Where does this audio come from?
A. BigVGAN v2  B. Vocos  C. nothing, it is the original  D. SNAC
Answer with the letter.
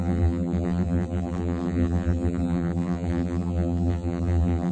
A